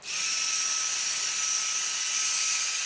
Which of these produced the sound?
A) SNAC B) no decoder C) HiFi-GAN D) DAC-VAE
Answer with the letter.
B